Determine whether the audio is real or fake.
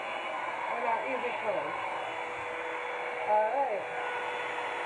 real